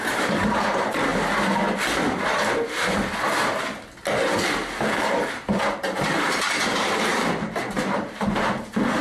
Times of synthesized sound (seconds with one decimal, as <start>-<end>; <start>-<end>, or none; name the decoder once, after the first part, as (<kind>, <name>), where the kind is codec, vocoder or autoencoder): 0.0-1.1 (vocoder, BigVGAN v2); 5.3-9.0